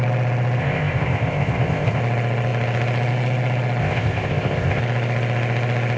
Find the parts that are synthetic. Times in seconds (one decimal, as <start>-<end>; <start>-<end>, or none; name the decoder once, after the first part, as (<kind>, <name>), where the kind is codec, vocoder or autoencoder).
0.6-2.0 (codec, ZipCodec); 3.8-4.8